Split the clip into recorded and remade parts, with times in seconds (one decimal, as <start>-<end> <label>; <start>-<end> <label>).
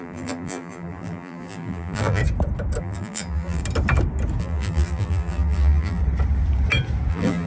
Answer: 0.0-2.2 remade; 2.2-2.8 recorded; 2.8-3.6 remade; 3.6-4.4 recorded; 4.4-6.0 remade; 6.0-7.1 recorded; 7.1-7.5 remade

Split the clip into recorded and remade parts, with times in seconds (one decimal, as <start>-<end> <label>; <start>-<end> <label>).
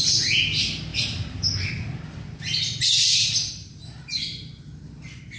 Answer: 0.0-0.9 recorded; 0.9-1.7 remade; 1.7-3.6 recorded; 3.6-4.2 remade; 4.2-5.4 recorded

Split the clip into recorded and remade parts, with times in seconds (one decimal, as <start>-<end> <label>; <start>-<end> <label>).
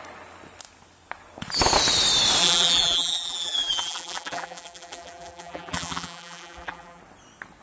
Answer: 0.0-2.4 recorded; 2.4-7.0 remade; 7.0-7.6 recorded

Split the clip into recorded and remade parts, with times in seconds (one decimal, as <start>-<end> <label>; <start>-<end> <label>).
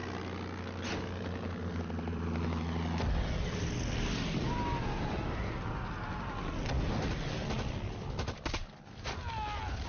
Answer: 0.0-7.4 recorded; 7.4-8.5 remade; 8.5-9.9 recorded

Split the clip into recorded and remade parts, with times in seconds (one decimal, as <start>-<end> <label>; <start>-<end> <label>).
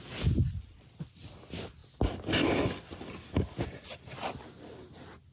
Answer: 0.0-5.3 recorded